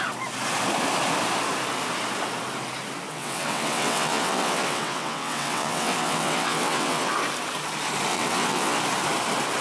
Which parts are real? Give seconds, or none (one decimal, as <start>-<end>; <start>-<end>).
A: 0.0-3.1; 7.1-8.1; 8.8-9.6